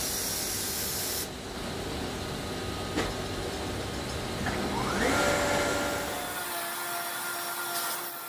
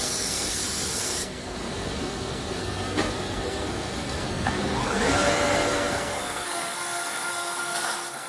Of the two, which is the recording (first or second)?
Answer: first